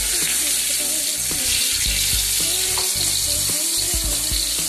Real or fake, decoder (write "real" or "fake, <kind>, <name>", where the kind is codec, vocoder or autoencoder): real